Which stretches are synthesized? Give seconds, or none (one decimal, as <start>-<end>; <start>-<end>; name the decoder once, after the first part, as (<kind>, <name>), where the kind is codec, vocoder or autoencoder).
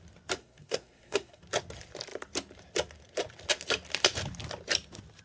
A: 0.4-1.4 (codec, SNAC)